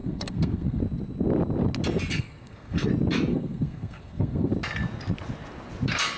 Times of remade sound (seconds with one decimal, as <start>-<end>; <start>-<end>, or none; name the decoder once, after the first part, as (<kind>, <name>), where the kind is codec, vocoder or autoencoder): 0.0-0.8 (codec, SNAC); 2.1-2.9; 3.3-4.5